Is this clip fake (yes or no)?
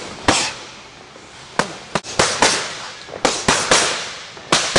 no